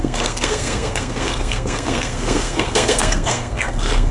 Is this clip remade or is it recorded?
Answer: remade